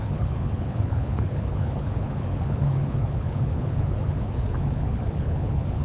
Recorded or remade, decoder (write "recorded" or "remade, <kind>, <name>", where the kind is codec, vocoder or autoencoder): remade, codec, HILCodec